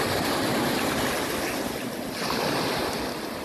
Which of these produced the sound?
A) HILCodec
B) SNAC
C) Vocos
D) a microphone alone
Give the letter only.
D